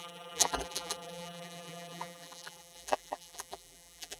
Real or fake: fake